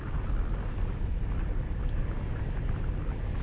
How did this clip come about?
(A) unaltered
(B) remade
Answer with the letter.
A